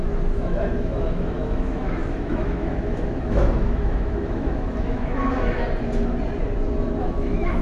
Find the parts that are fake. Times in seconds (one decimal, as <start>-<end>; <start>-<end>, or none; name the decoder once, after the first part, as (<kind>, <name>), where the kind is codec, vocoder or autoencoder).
0.0-5.6 (autoencoder, DAC-VAE); 7.0-7.6

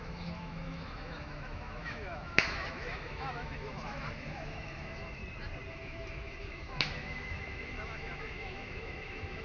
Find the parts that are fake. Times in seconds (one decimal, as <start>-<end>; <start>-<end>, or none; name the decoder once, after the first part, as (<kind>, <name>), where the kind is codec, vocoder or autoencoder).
0.0-5.2 (autoencoder, DAC-VAE); 5.7-9.4

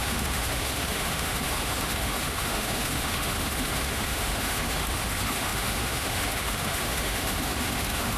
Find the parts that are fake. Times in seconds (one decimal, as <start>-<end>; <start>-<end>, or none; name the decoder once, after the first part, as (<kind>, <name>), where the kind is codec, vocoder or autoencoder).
0.0-8.2 (autoencoder, DAC-VAE)